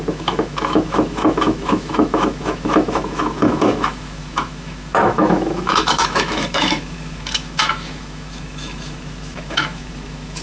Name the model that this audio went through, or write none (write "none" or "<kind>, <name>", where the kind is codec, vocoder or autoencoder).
autoencoder, DAC-VAE